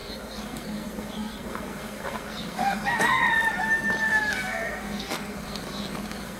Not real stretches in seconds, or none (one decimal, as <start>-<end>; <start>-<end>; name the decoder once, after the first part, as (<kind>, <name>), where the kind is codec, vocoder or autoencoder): 0.0-3.2 (codec, SNAC); 4.0-6.4